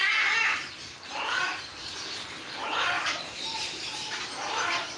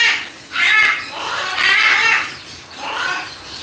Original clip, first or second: second